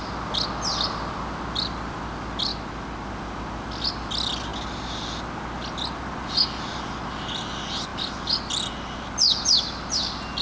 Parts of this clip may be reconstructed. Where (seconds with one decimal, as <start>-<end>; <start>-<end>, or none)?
none